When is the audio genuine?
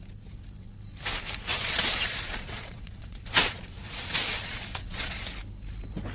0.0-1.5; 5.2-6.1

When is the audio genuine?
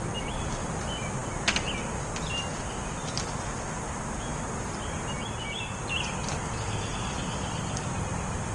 0.0-8.5